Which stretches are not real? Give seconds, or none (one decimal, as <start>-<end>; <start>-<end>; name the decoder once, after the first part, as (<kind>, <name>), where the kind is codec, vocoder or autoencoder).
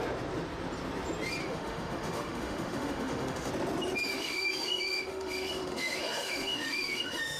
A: 1.4-3.5 (autoencoder, DAC-VAE); 4.1-7.4